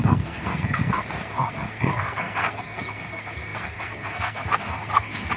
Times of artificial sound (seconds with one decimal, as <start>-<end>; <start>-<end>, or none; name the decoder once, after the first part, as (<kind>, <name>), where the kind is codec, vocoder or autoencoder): 0.0-5.4 (codec, SNAC)